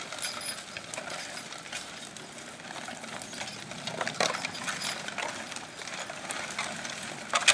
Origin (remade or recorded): recorded